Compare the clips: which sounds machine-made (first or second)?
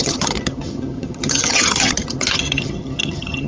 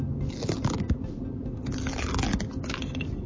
first